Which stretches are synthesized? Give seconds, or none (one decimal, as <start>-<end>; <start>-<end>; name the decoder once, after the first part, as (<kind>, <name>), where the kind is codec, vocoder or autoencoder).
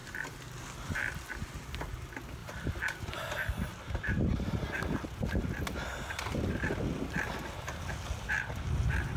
0.0-1.5 (vocoder, BigVGAN v2); 2.4-4.8